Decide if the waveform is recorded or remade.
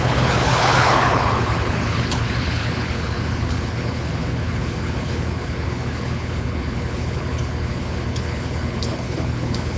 remade